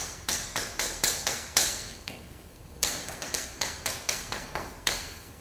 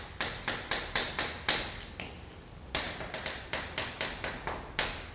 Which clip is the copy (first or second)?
first